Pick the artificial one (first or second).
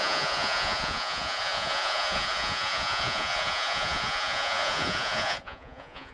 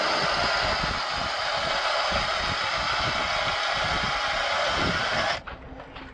first